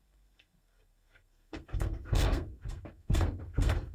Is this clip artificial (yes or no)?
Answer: yes